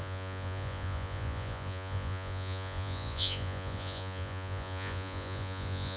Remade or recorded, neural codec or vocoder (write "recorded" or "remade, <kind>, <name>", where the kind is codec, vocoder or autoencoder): remade, vocoder, Vocos